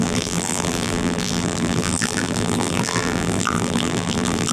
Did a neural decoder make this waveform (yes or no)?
yes